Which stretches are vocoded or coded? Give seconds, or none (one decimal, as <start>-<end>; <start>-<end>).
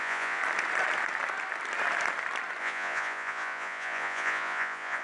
0.0-0.4; 2.6-5.0